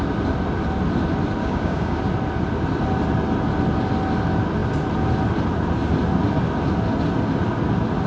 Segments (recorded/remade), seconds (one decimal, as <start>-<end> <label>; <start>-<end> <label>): 0.0-1.4 recorded; 1.4-2.0 remade; 2.0-8.1 recorded